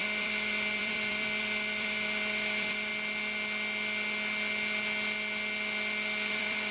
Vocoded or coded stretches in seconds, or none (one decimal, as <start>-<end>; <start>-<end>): 0.0-2.9; 6.3-6.7